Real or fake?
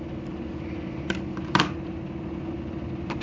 real